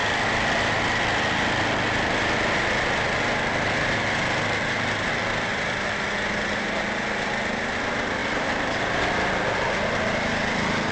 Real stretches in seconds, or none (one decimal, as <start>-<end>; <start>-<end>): 0.0-5.5; 6.1-8.2; 9.0-10.9